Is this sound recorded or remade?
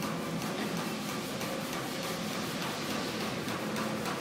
recorded